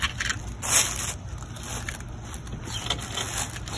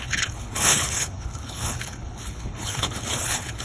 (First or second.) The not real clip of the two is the second